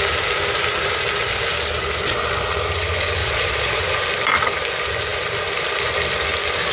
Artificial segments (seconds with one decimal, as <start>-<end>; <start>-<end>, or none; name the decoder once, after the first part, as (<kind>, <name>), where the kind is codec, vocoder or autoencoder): 3.2-3.8 (vocoder, Vocos)